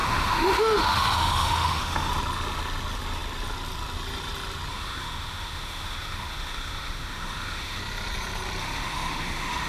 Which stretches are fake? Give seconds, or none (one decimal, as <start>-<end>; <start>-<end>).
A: 0.0-2.1; 4.7-7.8; 8.6-9.7